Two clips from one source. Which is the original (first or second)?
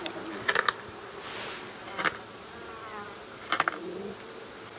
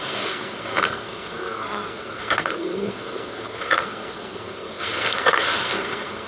first